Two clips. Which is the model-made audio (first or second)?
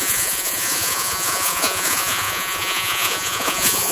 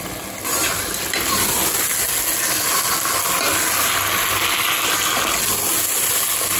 first